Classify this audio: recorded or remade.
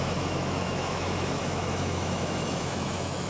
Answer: remade